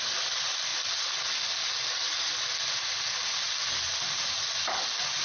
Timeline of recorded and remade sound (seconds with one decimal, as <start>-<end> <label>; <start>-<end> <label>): 0.0-5.2 recorded